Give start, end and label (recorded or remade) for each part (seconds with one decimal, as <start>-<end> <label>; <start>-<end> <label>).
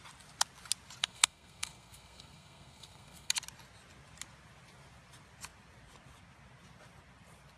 0.0-1.0 recorded; 1.0-3.3 remade; 3.3-7.6 recorded